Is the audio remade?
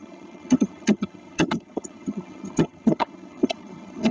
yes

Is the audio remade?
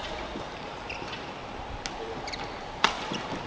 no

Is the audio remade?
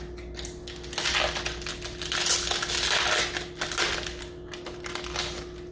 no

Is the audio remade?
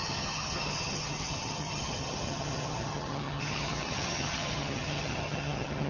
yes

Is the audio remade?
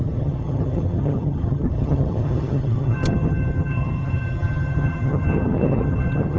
yes